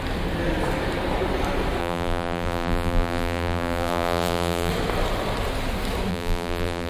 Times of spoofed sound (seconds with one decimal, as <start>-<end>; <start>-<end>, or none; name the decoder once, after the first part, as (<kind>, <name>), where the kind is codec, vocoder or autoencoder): 1.8-4.7 (vocoder, BigVGAN v2); 6.1-6.9